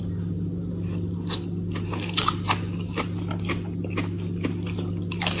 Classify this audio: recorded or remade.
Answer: recorded